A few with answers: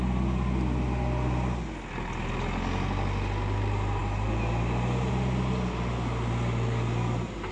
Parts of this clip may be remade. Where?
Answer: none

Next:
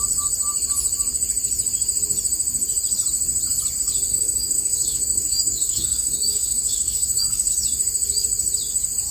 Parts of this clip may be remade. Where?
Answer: 4.1-7.5 (codec, DAC)